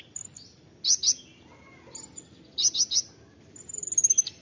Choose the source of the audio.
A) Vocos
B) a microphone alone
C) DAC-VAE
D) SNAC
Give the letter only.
B